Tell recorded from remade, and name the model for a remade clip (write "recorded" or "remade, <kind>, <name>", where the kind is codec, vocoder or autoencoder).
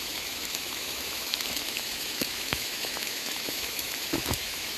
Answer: remade, autoencoder, DAC-VAE